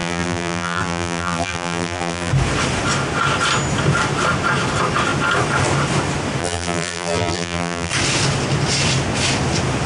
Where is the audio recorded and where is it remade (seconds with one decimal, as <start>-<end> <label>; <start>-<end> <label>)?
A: 0.0-2.3 remade; 2.3-6.4 recorded; 6.4-7.9 remade; 7.9-9.9 recorded